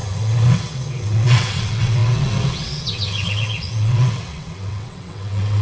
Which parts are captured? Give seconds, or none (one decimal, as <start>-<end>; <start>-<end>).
none